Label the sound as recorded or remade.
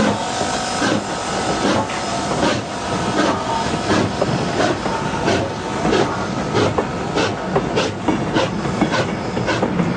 recorded